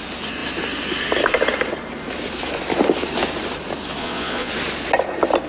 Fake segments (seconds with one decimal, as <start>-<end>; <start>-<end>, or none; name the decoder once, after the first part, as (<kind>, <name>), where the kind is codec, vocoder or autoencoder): 4.0-4.5 (vocoder, Vocos)